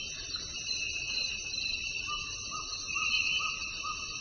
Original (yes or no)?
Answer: yes